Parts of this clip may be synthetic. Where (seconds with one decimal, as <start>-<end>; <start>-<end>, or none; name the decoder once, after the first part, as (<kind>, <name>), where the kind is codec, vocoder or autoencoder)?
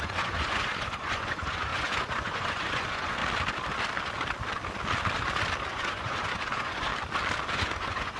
0.0-3.2 (vocoder, Vocos); 5.7-6.9; 7.5-8.2